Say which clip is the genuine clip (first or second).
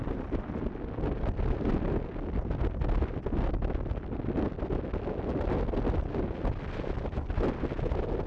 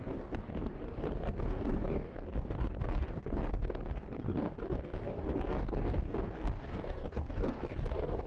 first